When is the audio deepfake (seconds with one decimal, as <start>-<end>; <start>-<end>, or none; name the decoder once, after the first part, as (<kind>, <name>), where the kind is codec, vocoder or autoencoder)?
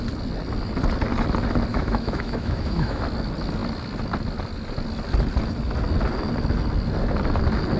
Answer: 1.7-3.0 (autoencoder, DAC-VAE)